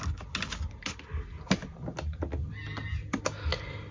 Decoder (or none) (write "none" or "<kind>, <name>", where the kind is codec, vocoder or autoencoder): none